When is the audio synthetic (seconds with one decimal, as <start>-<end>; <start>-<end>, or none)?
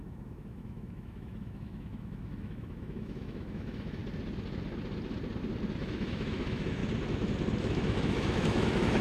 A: 0.0-4.0; 5.8-6.8; 7.6-9.0